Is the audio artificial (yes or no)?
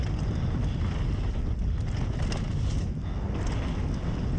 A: no